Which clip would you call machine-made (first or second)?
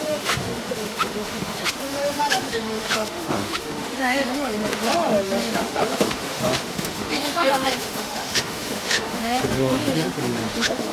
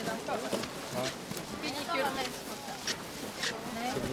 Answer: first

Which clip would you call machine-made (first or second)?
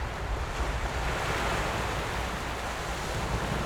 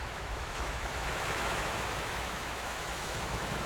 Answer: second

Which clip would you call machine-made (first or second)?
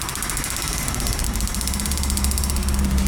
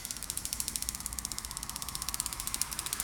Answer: second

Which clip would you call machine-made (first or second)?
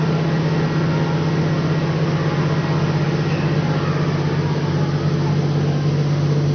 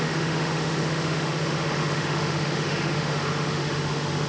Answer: second